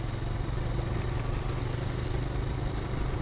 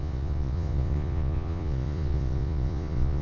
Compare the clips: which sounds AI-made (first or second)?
second